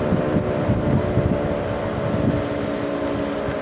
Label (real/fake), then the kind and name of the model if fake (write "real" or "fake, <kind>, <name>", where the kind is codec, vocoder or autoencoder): real